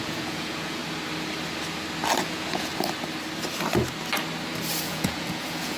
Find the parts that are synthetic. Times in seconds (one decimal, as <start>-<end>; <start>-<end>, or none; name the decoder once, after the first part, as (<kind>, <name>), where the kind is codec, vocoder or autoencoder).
0.0-0.8 (vocoder, Vocos); 2.2-2.7; 4.8-5.8